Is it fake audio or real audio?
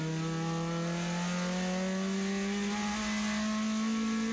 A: real